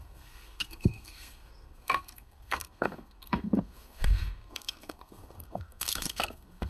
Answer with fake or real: fake